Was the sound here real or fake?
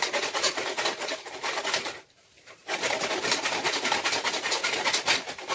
real